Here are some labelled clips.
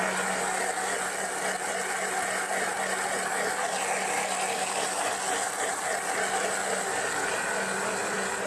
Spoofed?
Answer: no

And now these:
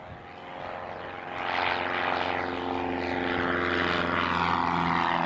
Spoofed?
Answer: no